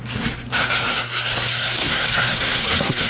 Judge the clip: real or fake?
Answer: fake